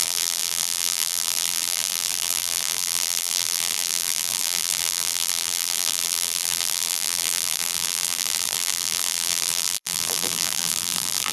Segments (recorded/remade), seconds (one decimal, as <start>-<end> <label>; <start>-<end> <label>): 0.0-11.3 remade